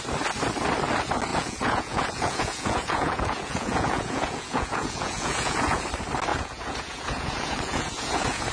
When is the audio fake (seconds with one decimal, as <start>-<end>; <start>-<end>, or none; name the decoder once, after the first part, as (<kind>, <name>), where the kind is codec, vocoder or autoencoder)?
1.3-5.8 (vocoder, Vocos); 6.3-8.5